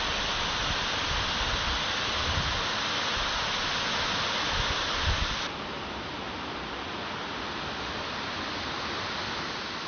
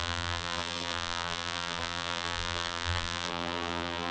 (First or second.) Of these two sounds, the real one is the first